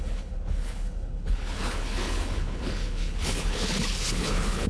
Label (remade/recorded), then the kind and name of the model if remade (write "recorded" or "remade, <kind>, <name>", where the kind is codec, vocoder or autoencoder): remade, codec, HILCodec